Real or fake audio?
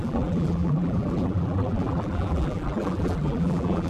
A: fake